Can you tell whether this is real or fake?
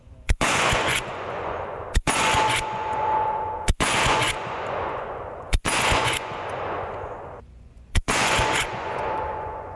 fake